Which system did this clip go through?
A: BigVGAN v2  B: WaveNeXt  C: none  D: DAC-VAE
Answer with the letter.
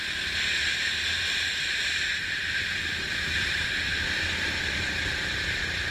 C